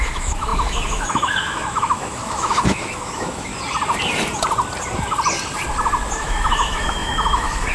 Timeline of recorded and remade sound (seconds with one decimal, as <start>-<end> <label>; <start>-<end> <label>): 0.0-3.5 remade; 3.5-6.2 recorded; 6.2-7.7 remade